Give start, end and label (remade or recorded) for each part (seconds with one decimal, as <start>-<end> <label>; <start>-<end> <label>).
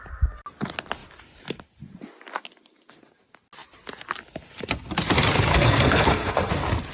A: 0.0-5.5 recorded; 5.5-6.5 remade; 6.5-6.9 recorded